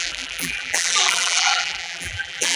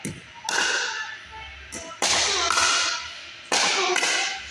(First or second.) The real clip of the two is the second